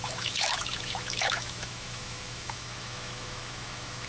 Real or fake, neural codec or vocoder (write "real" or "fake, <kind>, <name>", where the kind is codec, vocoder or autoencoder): fake, autoencoder, DAC-VAE